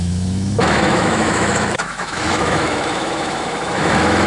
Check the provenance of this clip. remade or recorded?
remade